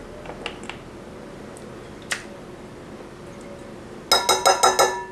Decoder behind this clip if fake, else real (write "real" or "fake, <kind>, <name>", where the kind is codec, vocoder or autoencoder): real